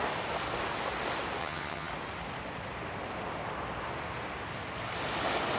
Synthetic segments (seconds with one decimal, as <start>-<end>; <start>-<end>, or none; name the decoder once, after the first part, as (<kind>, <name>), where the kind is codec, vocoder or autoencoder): 1.4-1.9 (vocoder, HiFi-GAN)